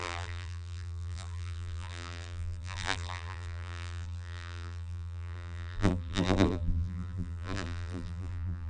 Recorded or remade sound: remade